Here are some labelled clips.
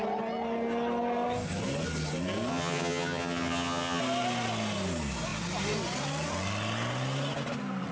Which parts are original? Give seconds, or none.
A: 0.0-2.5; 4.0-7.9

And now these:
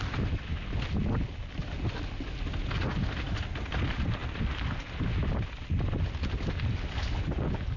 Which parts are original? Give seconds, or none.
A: 0.0-7.8

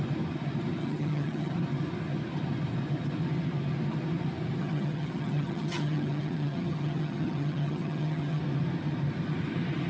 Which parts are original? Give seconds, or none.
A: 0.0-0.8; 1.5-4.6; 8.4-9.9